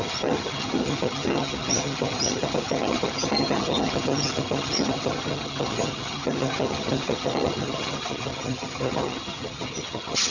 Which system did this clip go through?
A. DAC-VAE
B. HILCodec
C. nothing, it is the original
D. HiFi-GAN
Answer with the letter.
D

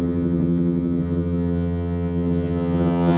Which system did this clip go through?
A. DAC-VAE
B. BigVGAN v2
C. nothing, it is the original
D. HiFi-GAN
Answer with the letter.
D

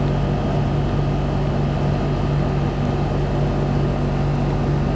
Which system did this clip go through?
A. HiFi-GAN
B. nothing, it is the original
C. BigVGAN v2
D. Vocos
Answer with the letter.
B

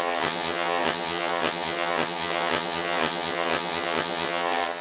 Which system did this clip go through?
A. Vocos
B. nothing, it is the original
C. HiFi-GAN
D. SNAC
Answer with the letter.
C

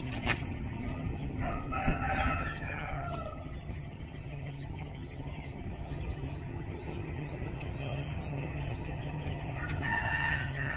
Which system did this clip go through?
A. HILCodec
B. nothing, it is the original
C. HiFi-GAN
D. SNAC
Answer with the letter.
C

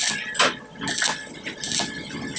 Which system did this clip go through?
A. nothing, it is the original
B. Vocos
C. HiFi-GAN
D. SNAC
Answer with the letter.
A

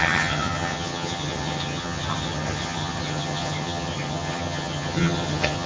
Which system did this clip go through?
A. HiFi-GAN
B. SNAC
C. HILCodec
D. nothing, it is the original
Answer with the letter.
A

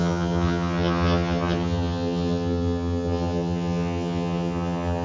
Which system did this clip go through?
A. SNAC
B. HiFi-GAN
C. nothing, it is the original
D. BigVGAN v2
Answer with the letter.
B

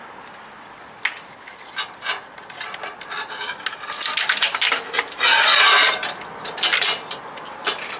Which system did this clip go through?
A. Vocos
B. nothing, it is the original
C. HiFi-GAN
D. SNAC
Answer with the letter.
B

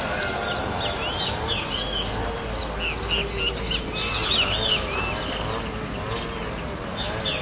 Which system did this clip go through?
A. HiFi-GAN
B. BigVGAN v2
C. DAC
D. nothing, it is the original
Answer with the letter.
D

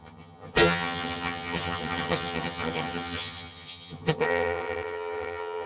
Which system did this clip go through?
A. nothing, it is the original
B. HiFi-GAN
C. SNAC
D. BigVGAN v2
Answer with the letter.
B